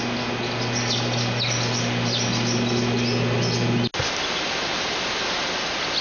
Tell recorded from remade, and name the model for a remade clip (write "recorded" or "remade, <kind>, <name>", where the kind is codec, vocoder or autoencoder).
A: recorded